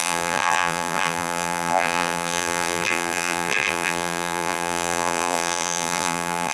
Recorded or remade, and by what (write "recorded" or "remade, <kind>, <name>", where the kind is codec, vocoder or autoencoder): remade, vocoder, BigVGAN v2